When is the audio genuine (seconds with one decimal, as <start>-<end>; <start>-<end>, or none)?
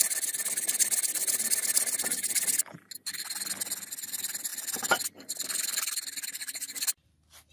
0.0-7.5